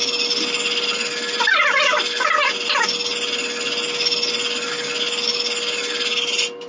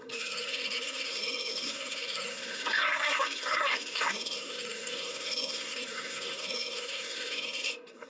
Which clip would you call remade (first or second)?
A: second